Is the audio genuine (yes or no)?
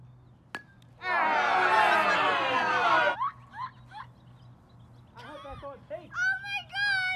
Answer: yes